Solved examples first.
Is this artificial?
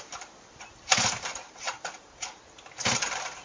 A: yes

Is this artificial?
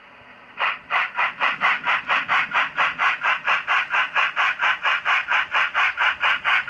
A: yes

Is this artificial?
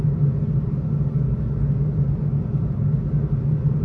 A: no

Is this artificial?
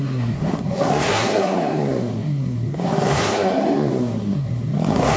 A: yes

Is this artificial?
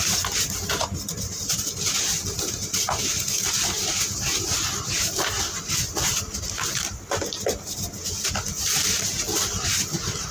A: no